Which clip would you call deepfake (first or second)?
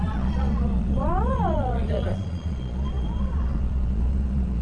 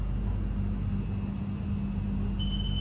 first